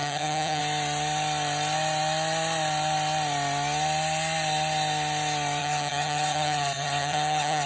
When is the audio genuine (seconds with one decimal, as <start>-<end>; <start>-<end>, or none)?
0.6-5.6

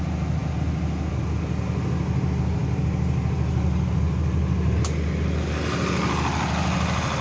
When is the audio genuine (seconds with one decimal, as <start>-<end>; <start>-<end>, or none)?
0.0-7.2

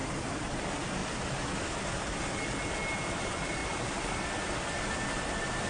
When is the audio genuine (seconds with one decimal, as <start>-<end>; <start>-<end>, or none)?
0.0-5.7

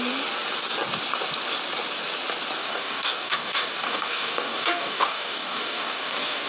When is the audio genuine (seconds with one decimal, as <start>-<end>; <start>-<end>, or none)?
0.0-2.6

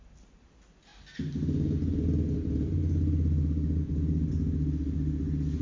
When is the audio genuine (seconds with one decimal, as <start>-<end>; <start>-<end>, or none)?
0.0-5.6

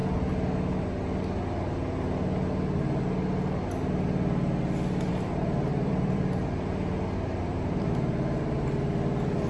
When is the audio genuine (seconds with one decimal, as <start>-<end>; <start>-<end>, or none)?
0.0-5.1

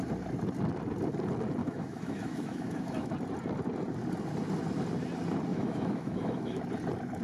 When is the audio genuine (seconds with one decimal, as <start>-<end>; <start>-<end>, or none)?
0.0-1.6; 3.1-5.5; 6.6-7.2